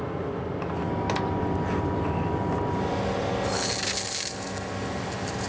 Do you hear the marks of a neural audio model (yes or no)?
no